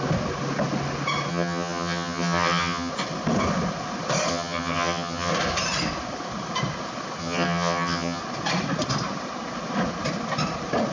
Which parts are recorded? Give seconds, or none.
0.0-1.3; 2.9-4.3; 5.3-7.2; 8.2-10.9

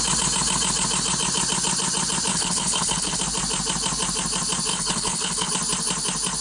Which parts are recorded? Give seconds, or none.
0.0-2.3; 3.2-4.7; 5.5-6.4

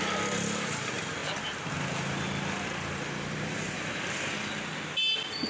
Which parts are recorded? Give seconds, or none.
0.0-5.5

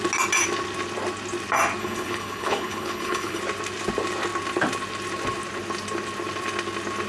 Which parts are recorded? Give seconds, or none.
0.0-1.8; 3.4-7.1

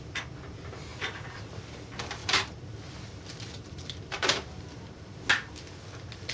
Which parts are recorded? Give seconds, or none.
0.0-0.9; 1.8-2.2; 4.9-6.3